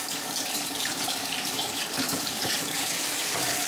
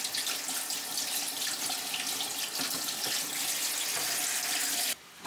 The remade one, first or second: first